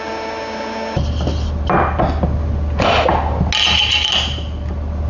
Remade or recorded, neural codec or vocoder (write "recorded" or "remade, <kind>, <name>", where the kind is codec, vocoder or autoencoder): recorded